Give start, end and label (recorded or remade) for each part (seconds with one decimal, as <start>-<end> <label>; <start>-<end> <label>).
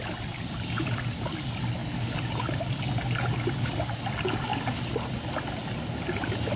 0.0-1.8 remade; 1.8-3.6 recorded; 3.6-6.6 remade